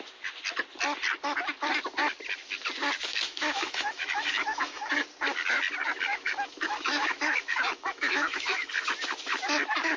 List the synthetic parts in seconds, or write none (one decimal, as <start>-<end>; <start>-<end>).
3.1-4.9; 6.1-8.7